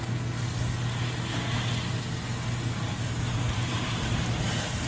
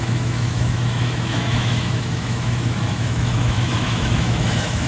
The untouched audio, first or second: first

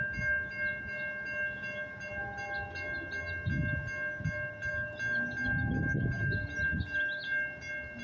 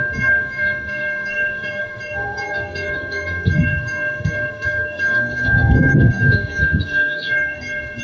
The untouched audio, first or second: first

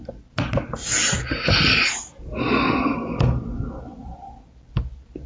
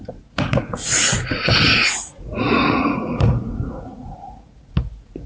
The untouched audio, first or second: first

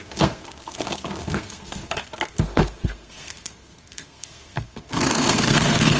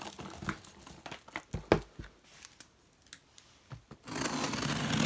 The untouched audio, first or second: second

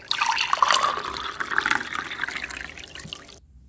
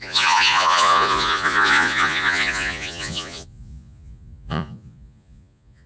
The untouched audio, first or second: first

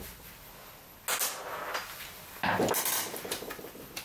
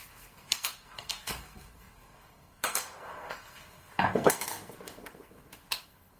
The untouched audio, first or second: first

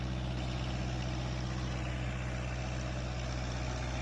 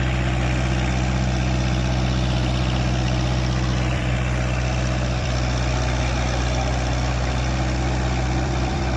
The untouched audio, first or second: first